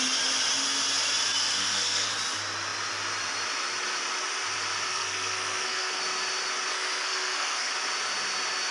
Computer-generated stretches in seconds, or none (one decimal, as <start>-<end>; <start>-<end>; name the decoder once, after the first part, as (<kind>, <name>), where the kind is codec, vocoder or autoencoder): 1.6-2.1 (codec, SNAC); 4.9-6.0; 6.7-7.7